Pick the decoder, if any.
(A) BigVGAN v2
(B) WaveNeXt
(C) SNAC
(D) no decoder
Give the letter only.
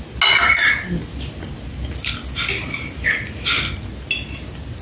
D